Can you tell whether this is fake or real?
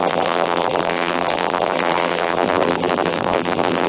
fake